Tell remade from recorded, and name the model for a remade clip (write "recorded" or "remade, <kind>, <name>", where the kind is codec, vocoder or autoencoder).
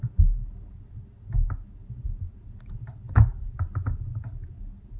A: recorded